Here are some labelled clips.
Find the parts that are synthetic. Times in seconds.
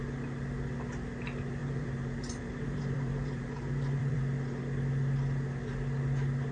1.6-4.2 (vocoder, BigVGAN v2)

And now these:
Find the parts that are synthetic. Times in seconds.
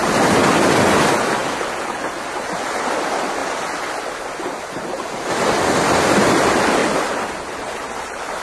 3.4-4.0 (vocoder, BigVGAN v2); 6.8-7.5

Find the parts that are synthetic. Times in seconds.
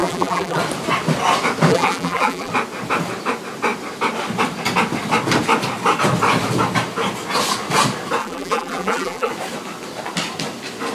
0.0-0.6 (vocoder, BigVGAN v2); 1.7-2.5; 8.2-9.3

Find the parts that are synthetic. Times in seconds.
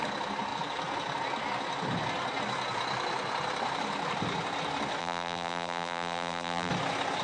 5.0-6.7 (vocoder, BigVGAN v2)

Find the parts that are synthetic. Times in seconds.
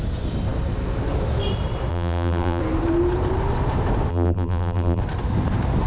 1.9-2.6 (vocoder, BigVGAN v2); 4.1-5.0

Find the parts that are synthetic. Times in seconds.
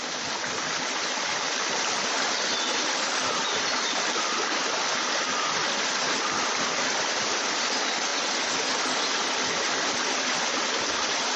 none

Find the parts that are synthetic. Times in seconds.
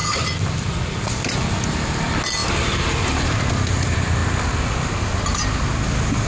0.0-1.5 (vocoder, BigVGAN v2); 2.4-3.5